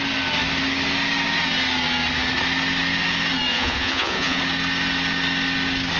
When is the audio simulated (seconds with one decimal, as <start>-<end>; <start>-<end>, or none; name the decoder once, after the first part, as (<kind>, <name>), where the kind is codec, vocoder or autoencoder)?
3.5-4.4 (vocoder, Vocos)